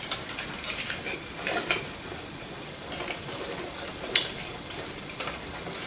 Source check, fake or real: real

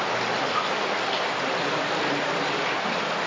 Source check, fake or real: real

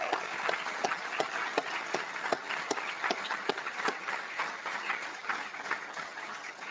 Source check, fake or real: fake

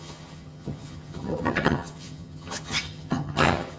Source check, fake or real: fake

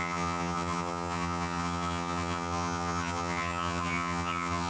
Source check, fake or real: fake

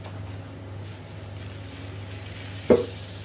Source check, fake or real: real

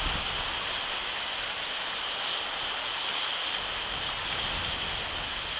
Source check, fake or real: real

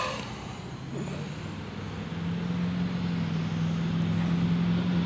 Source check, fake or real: real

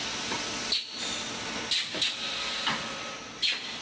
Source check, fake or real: real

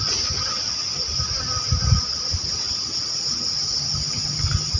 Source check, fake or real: real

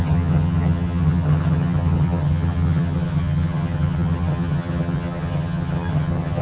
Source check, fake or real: fake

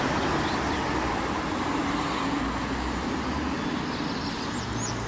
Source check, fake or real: real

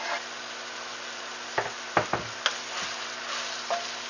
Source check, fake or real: real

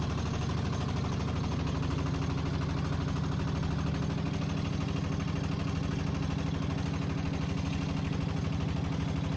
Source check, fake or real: real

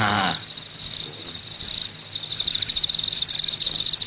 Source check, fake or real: real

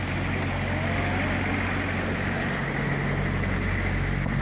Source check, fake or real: real